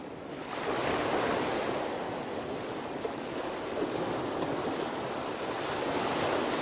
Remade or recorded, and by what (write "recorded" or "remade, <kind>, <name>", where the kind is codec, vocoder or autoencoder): recorded